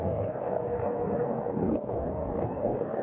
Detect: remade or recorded remade